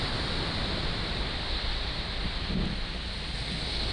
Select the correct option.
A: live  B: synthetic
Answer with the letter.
A